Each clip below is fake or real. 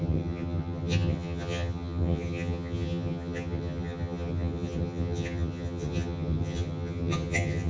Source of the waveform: fake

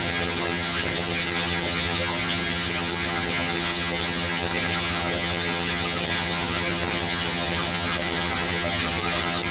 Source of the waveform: fake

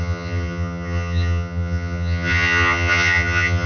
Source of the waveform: fake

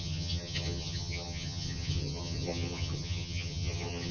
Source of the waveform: fake